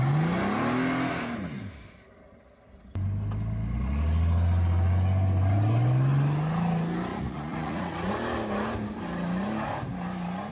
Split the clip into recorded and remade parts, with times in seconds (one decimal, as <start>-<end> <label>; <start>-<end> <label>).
0.0-7.1 recorded; 7.1-8.1 remade; 8.1-10.5 recorded